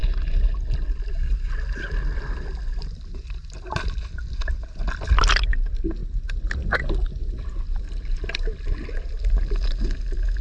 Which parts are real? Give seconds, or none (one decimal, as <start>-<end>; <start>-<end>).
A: 0.0-10.4